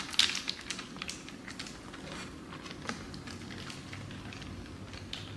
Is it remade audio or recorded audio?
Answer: recorded